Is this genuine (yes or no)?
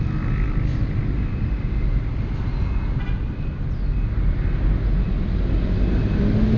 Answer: yes